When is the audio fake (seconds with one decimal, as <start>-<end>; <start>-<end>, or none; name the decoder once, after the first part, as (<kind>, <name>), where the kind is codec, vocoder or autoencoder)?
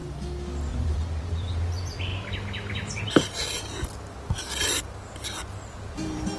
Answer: 0.7-2.1 (vocoder, BigVGAN v2); 5.9-6.4